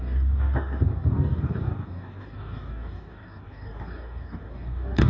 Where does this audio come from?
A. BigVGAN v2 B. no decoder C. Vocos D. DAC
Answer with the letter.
D